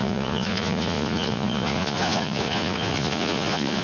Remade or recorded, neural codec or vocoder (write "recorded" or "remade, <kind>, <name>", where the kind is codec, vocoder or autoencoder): remade, vocoder, Vocos